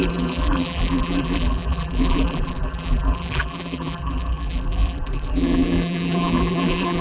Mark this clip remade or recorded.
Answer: remade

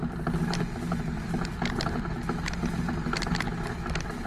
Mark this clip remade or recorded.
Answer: recorded